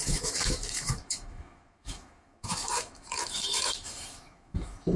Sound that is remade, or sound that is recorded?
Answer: remade